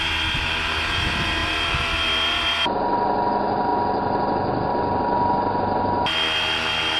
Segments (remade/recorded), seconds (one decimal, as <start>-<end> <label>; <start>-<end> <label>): 0.0-7.0 recorded